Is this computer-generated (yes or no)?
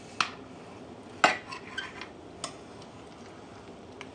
no